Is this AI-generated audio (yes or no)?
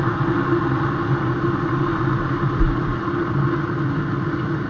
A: no